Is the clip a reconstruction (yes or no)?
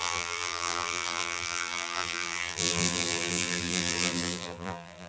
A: yes